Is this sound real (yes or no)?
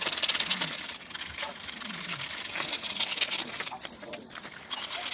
yes